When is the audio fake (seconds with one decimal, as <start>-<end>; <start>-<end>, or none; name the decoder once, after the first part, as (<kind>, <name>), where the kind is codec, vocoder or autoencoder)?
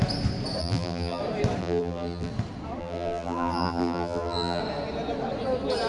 0.6-1.2 (vocoder, BigVGAN v2); 1.6-2.3; 2.8-4.6